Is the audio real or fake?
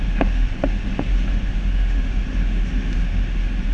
fake